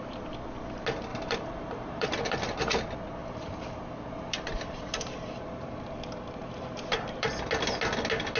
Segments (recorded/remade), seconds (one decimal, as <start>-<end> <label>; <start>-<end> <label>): 0.0-1.1 recorded; 1.1-2.6 remade; 2.6-3.2 recorded; 3.2-7.3 remade; 7.3-8.4 recorded